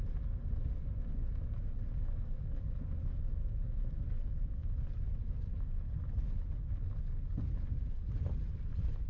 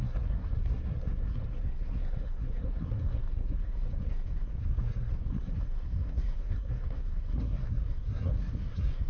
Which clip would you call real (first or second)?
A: first